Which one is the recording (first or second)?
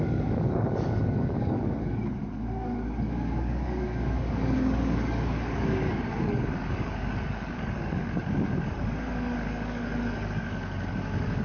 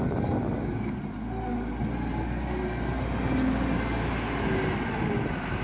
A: second